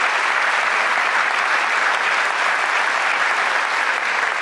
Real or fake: real